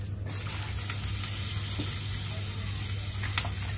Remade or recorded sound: recorded